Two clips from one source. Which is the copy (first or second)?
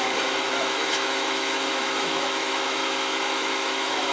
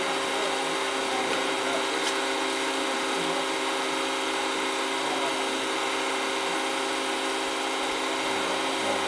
first